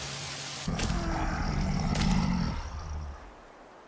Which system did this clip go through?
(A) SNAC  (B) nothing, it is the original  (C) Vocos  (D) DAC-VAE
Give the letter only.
B